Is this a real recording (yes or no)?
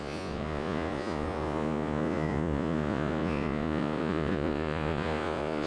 no